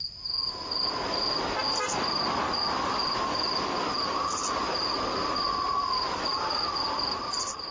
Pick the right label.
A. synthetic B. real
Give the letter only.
B